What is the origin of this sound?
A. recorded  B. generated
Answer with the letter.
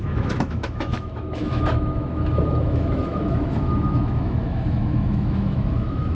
B